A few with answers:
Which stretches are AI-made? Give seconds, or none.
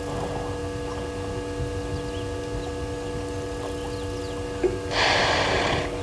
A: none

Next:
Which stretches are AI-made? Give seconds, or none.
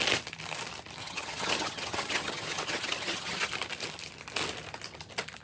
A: 1.0-3.5 (vocoder, HiFi-GAN)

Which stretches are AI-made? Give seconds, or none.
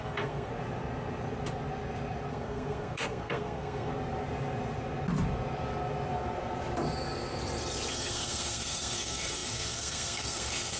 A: 0.0-0.5 (codec, SNAC); 2.3-3.9; 7.9-10.8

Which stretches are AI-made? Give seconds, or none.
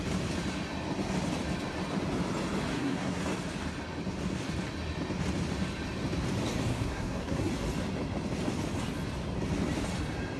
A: 2.7-3.2 (codec, SNAC); 6.7-7.5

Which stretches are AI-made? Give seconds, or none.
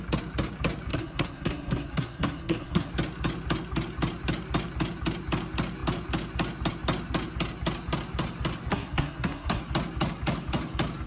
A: 0.9-2.9 (codec, SNAC); 8.7-9.6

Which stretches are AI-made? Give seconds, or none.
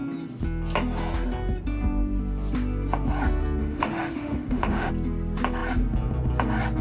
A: 3.6-4.9 (autoencoder, DAC-VAE)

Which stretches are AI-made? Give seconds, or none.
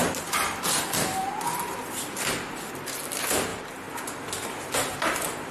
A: none